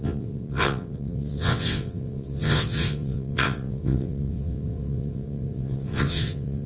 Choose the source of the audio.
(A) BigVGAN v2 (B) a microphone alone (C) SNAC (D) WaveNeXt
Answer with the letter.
D